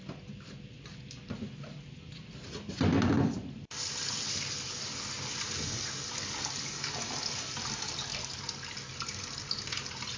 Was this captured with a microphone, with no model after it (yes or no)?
yes